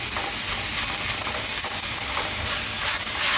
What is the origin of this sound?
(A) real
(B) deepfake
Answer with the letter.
A